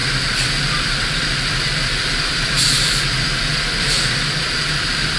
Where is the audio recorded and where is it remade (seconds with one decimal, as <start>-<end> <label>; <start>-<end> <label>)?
0.0-5.2 remade